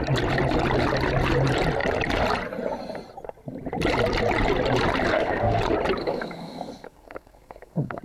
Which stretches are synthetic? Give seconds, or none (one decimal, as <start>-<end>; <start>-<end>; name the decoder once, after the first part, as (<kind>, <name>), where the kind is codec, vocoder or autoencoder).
5.1-5.6 (codec, SNAC); 6.0-8.0